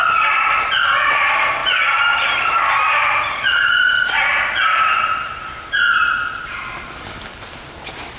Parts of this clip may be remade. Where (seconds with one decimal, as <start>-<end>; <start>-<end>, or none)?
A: none